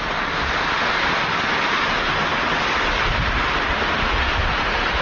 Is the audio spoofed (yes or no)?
no